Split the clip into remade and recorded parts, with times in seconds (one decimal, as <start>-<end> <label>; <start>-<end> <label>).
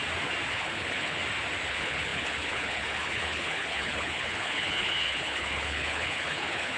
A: 0.0-0.5 recorded; 0.5-1.2 remade; 1.2-1.7 recorded; 1.7-6.8 remade